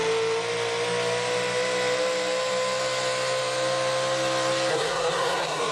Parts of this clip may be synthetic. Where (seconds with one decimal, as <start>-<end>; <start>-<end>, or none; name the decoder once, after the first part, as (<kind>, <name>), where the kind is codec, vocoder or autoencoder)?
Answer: 4.7-5.7 (codec, SNAC)